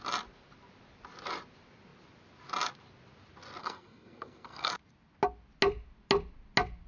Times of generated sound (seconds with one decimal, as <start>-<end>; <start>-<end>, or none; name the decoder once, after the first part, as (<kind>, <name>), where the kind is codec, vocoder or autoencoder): 3.6-4.7 (codec, SNAC)